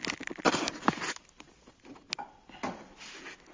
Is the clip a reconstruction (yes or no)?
no